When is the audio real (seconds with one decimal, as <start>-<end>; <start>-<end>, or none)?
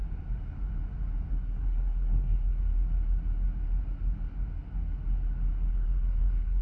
0.0-1.3; 2.6-5.7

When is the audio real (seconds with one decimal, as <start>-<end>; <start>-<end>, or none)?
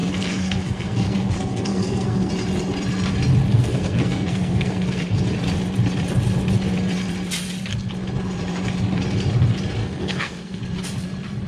2.3-3.5; 5.2-9.8; 10.6-11.5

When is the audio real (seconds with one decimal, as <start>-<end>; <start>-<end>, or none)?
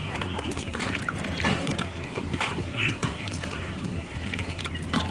1.0-1.5; 4.6-5.1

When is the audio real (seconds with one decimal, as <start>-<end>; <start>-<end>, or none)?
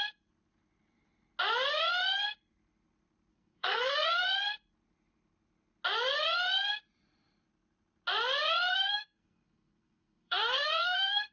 0.0-3.3; 4.2-8.7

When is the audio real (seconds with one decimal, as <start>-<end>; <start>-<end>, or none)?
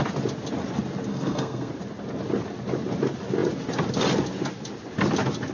0.0-1.1; 1.7-5.5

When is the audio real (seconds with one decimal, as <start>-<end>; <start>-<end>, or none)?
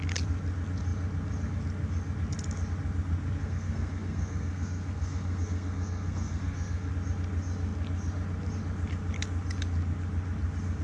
0.0-3.4; 6.9-10.8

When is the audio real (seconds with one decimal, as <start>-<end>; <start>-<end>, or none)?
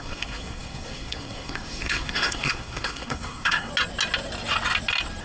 3.7-5.2